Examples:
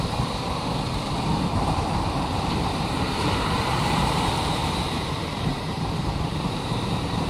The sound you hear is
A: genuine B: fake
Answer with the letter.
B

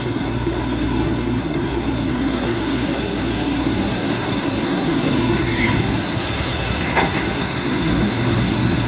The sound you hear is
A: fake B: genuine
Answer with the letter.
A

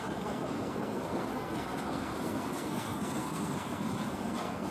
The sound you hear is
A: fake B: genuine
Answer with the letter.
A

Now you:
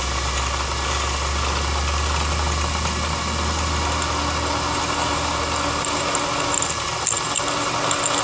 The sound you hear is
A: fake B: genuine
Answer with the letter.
B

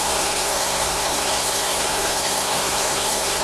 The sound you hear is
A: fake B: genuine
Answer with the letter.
A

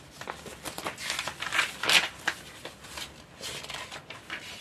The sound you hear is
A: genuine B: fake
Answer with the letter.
A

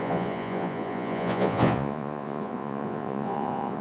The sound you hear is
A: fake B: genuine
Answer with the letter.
A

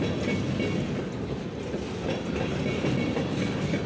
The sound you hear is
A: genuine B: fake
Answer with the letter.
A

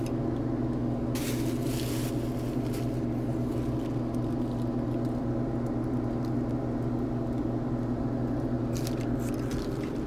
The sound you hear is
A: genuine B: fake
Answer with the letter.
A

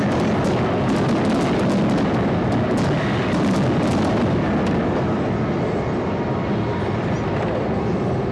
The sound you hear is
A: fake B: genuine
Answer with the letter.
B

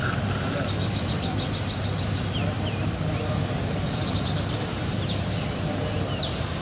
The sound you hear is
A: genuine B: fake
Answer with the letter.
A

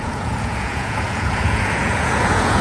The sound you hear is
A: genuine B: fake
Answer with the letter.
B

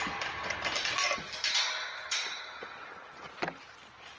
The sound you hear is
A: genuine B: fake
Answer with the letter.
A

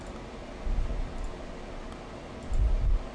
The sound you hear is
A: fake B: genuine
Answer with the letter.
B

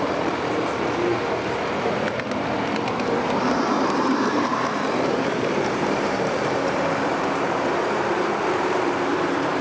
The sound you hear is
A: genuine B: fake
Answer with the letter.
B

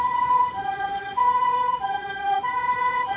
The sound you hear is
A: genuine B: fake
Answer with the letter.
B